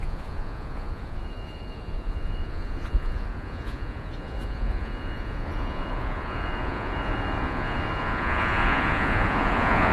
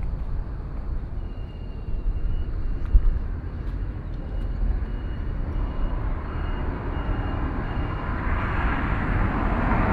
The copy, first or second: first